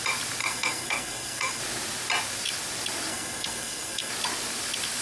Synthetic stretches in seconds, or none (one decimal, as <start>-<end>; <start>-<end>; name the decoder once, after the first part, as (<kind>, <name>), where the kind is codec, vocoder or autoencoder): 0.4-1.6 (codec, SNAC); 3.1-4.1